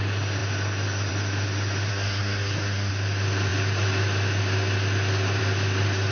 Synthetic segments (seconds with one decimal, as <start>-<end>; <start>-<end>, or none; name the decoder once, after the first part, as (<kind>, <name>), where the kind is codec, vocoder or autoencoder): 1.9-2.9 (codec, SNAC)